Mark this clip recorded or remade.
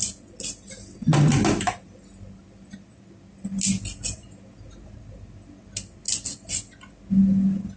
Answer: recorded